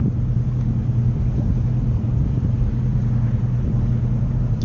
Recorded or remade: recorded